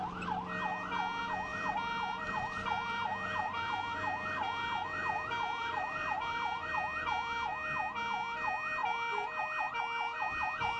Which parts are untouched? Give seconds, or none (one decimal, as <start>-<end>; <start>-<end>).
0.0-1.5; 6.7-10.8